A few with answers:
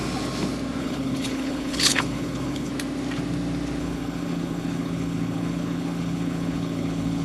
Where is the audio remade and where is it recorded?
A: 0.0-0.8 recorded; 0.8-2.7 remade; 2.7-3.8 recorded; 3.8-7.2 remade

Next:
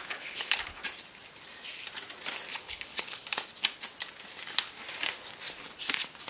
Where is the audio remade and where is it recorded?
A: 0.0-0.8 remade; 0.8-2.6 recorded; 2.6-3.2 remade; 3.2-6.3 recorded

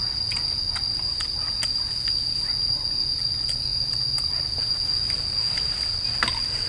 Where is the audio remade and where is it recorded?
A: 0.0-6.7 recorded

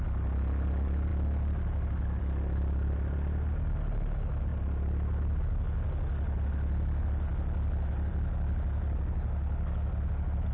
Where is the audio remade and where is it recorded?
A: 0.0-10.5 recorded